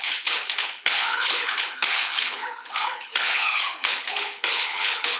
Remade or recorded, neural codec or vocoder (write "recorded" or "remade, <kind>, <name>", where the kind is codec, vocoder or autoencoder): remade, codec, HILCodec